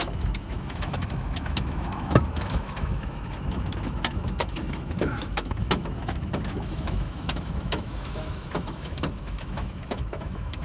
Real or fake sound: fake